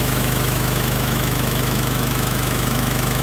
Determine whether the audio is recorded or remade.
remade